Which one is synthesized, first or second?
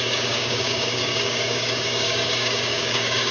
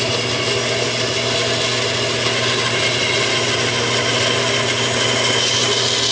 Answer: first